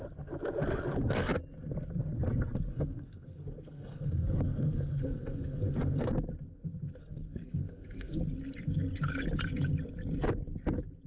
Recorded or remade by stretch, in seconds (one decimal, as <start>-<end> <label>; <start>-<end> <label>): 0.0-2.7 recorded; 2.7-6.1 remade; 6.1-7.0 recorded; 7.0-8.2 remade; 8.2-11.1 recorded